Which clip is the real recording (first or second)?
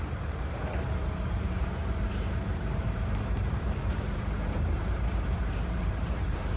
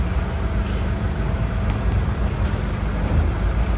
second